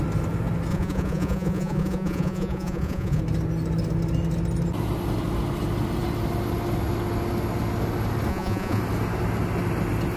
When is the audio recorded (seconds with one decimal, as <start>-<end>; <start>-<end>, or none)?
0.0-0.7; 3.2-8.3; 8.8-10.2